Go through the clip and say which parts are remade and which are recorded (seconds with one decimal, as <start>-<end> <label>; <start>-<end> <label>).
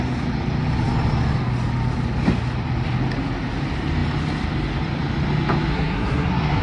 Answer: 0.0-5.7 recorded; 5.7-6.6 remade